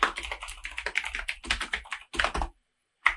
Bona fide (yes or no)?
yes